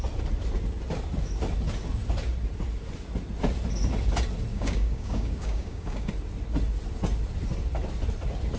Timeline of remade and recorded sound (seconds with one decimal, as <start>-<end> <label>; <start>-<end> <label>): 0.0-4.5 recorded; 4.5-6.1 remade; 6.1-8.6 recorded

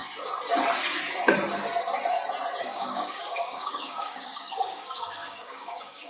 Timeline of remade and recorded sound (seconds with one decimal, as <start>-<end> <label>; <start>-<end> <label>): 0.0-2.6 recorded; 2.6-6.1 remade

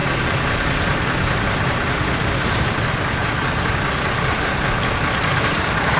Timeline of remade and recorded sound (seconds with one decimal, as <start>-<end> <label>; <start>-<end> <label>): 0.0-6.0 recorded

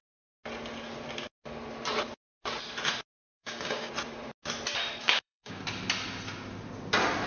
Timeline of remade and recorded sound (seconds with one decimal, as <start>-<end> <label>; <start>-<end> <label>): 0.0-3.2 recorded; 3.2-3.9 remade; 3.9-5.0 recorded; 5.0-5.6 remade; 5.6-7.3 recorded

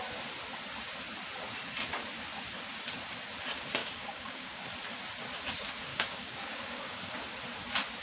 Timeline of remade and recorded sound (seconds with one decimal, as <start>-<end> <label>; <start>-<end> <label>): 0.0-3.8 recorded; 3.8-4.6 remade; 4.6-5.9 recorded; 5.9-7.1 remade; 7.1-8.0 recorded

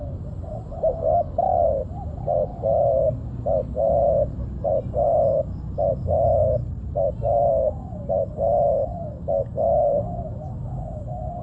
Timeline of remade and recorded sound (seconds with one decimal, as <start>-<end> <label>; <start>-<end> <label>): 0.0-2.5 recorded; 2.5-3.3 remade; 3.3-8.9 recorded; 8.9-10.0 remade; 10.0-11.4 recorded

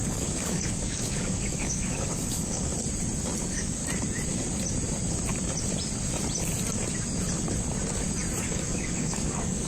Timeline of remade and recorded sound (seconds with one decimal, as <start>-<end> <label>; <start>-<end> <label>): 0.0-2.7 remade; 2.7-3.4 recorded; 3.4-3.8 remade; 3.8-8.4 recorded; 8.4-9.7 remade

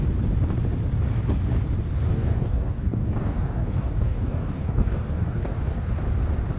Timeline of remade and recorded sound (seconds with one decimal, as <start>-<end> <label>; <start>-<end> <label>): 0.0-2.1 recorded; 2.1-5.7 remade; 5.7-6.6 recorded